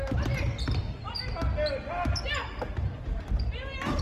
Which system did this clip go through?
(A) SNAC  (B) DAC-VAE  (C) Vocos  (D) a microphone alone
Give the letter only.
D